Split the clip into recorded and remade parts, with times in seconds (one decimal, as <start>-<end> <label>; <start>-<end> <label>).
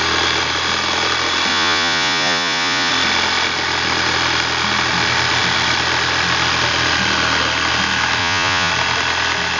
0.0-1.5 recorded; 1.5-2.9 remade; 2.9-8.2 recorded; 8.2-8.7 remade; 8.7-9.6 recorded